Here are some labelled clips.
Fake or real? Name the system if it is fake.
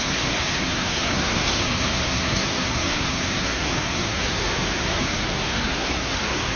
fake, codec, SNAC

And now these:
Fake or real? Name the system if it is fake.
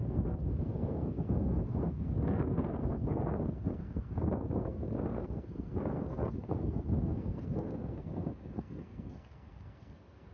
fake, codec, SNAC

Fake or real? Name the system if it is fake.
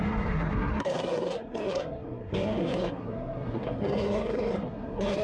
fake, codec, SNAC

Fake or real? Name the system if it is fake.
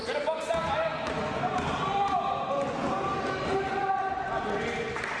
real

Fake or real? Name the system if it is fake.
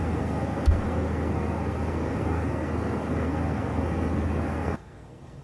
fake, codec, SNAC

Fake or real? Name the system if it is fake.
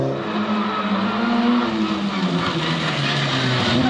real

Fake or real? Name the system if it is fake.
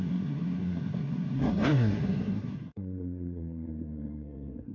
fake, codec, SNAC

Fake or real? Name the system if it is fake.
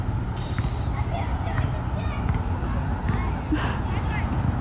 real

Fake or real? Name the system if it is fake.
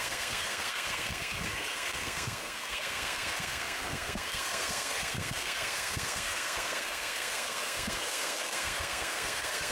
fake, codec, SNAC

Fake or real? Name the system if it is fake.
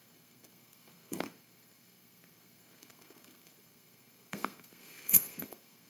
fake, codec, SNAC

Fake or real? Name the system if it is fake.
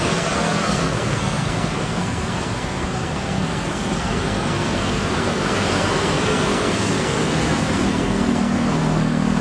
fake, codec, SNAC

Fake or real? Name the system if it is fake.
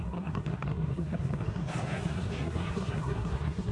fake, codec, SNAC